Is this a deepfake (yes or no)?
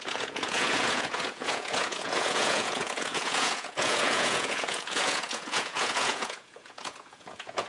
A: yes